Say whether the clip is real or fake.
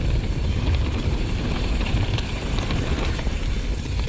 fake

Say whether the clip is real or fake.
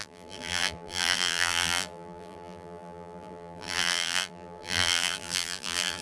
fake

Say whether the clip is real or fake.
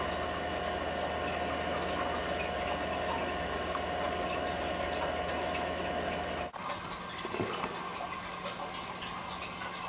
real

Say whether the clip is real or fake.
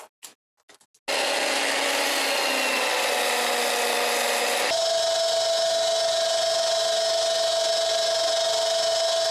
real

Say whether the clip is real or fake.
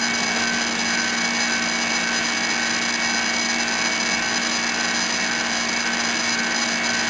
real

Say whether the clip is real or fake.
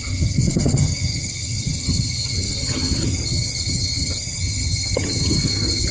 fake